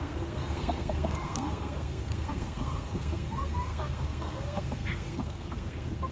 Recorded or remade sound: remade